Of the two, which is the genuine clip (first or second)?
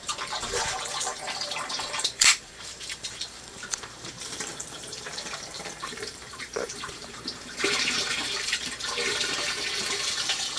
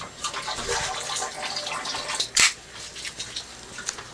second